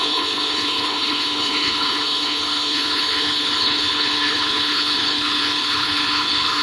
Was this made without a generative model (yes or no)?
no